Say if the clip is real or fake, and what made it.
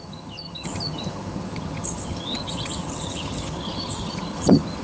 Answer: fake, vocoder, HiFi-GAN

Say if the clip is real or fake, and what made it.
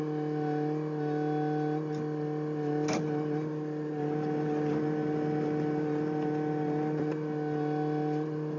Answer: real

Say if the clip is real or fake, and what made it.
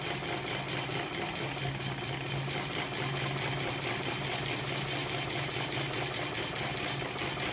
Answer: real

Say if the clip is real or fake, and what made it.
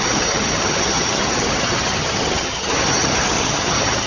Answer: fake, vocoder, HiFi-GAN